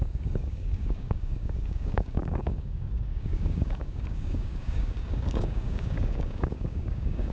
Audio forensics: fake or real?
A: fake